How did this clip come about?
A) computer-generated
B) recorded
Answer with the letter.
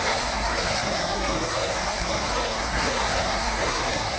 A